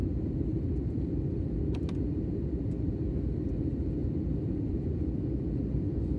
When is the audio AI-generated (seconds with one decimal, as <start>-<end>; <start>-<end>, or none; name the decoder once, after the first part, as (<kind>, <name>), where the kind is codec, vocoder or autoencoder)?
0.0-0.6 (vocoder, BigVGAN v2)